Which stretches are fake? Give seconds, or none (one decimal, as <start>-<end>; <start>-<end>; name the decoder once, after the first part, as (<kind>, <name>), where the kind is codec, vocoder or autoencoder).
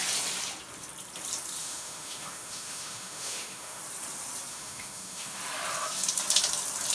1.6-3.8 (autoencoder, DAC-VAE); 4.5-5.4